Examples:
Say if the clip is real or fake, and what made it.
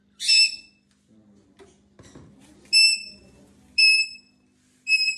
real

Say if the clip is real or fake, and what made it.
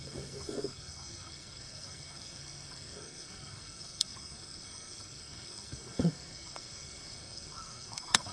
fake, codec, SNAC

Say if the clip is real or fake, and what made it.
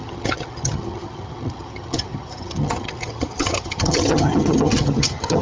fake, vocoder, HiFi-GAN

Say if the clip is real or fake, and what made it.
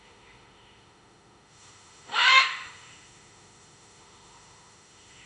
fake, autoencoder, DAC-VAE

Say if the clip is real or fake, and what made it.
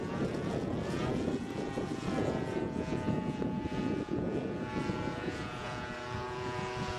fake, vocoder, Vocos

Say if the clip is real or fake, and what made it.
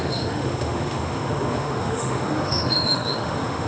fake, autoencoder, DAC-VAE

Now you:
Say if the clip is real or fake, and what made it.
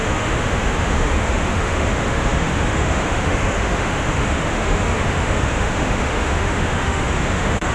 fake, autoencoder, DAC-VAE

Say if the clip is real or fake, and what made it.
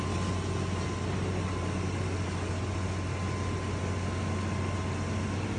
real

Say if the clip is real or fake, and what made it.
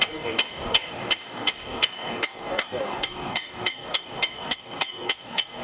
fake, codec, DAC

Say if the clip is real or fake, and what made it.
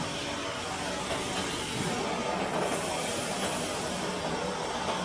real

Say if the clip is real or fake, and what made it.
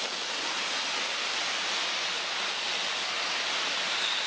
real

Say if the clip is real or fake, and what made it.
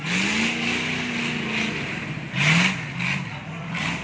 real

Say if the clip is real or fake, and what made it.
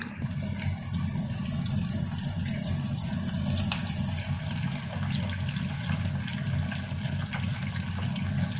real